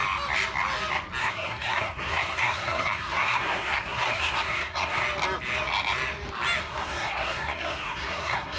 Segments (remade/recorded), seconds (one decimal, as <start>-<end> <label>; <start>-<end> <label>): 0.0-1.2 recorded; 1.2-5.0 remade; 5.0-6.6 recorded; 6.6-8.6 remade